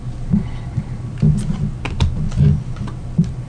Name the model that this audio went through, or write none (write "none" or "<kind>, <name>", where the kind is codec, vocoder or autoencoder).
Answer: none